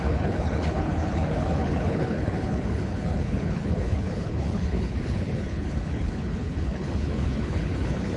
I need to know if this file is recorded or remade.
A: remade